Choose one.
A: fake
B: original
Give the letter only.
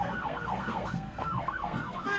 A